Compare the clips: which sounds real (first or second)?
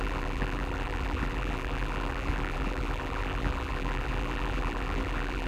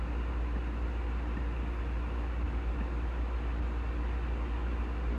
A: second